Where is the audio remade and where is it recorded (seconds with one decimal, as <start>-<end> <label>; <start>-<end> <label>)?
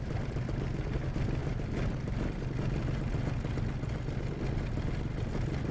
0.0-5.7 recorded